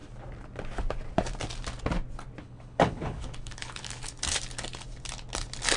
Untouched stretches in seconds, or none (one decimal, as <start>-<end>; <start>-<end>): 0.0-2.4; 4.2-5.8